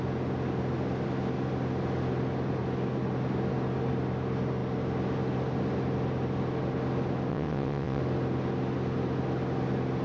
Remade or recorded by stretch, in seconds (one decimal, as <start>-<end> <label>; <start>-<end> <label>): 0.0-7.3 recorded; 7.3-8.0 remade; 8.0-10.0 recorded